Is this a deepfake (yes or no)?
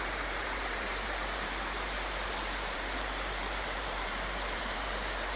yes